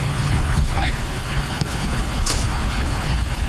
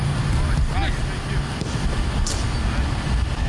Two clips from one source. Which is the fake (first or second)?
first